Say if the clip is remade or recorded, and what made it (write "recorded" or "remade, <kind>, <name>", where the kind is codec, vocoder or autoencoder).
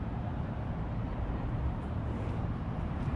remade, vocoder, BigVGAN v2